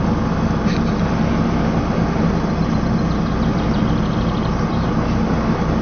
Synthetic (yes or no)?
no